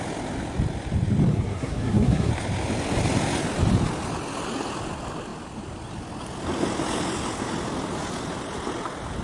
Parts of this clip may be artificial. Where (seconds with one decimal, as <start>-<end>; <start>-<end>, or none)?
1.3-2.3